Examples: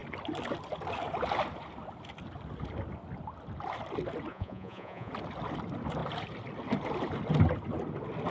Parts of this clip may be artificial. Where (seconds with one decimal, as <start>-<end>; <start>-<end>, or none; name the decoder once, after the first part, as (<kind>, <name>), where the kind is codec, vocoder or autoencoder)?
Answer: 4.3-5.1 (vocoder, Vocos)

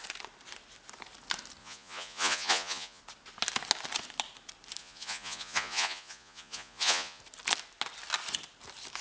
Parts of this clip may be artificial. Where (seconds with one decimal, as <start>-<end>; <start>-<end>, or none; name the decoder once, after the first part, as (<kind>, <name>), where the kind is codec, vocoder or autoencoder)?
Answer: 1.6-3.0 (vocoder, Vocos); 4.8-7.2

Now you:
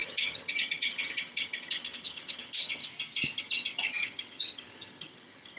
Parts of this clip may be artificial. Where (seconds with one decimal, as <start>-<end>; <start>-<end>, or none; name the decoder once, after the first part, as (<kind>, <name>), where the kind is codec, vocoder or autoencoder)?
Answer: 0.0-2.8 (vocoder, HiFi-GAN); 3.4-5.6

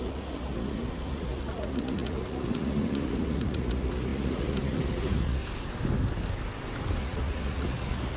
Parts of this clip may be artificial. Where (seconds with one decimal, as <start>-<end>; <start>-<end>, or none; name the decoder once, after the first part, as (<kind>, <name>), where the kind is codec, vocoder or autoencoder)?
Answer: 0.0-5.4 (vocoder, Vocos); 7.0-8.2

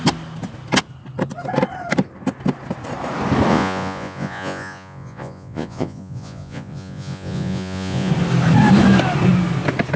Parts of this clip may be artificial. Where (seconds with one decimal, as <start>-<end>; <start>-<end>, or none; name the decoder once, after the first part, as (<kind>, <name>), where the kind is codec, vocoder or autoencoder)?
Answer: 3.5-8.1 (vocoder, Vocos)

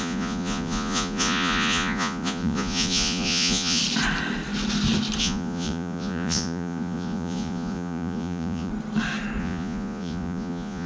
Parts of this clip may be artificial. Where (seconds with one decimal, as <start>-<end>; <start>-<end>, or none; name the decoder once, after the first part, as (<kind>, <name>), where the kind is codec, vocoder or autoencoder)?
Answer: 0.0-3.8 (vocoder, Vocos); 5.2-8.7; 9.4-10.9

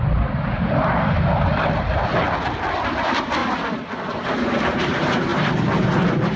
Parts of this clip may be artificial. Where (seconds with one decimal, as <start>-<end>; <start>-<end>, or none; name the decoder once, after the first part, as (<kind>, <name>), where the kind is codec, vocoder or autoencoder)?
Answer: 0.0-2.1 (vocoder, BigVGAN v2); 2.7-3.4; 4.2-6.4